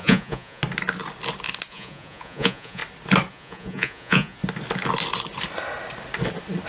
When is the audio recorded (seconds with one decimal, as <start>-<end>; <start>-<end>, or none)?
0.6-1.7; 2.8-3.3; 4.4-6.7